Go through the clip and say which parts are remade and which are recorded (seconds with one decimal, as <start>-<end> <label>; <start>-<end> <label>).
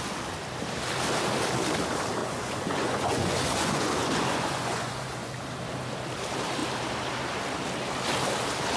0.0-2.2 recorded; 2.2-5.3 remade; 5.3-8.8 recorded